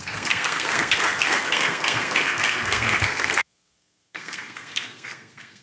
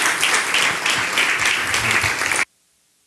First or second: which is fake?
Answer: first